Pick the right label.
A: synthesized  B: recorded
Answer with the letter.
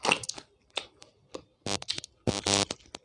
B